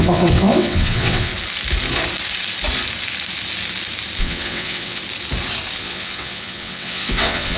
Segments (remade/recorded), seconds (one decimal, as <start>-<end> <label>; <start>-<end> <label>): 0.0-1.3 remade; 1.3-4.2 recorded; 4.2-5.0 remade; 5.0-5.8 recorded; 5.8-7.6 remade